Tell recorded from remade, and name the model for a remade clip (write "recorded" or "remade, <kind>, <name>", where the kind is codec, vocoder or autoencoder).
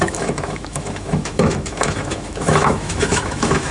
remade, autoencoder, DAC-VAE